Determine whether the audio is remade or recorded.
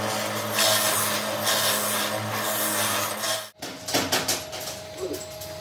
recorded